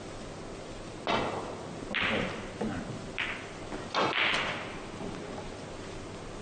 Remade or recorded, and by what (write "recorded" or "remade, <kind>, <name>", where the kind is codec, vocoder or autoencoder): recorded